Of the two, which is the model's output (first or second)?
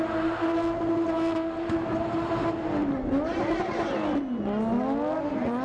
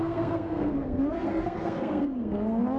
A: second